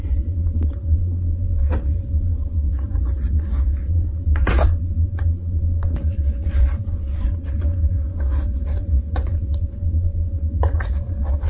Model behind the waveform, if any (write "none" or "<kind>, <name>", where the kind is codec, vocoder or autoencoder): vocoder, Vocos